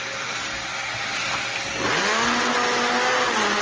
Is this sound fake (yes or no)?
no